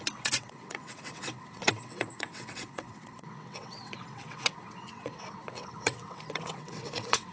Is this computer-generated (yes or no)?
yes